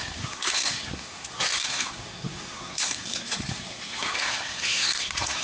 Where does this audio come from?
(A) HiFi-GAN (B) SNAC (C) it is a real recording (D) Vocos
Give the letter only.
B